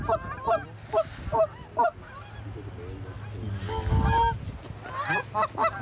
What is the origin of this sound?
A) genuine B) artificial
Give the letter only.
A